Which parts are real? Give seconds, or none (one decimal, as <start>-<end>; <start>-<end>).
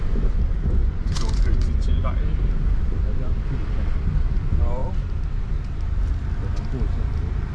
0.0-0.8; 2.0-7.5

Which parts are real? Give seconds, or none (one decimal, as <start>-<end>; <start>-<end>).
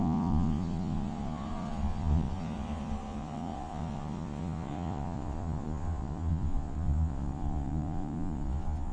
none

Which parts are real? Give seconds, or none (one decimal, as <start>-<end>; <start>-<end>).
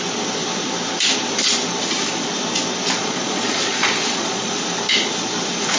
0.0-3.0; 4.5-5.8